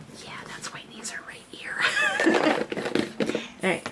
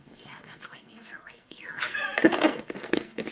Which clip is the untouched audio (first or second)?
first